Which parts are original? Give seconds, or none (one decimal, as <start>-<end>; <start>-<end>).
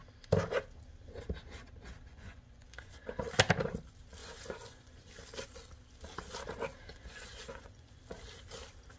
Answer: 0.0-2.1; 3.2-4.2; 5.1-6.9; 8.0-9.0